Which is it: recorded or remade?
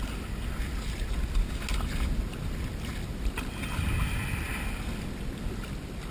recorded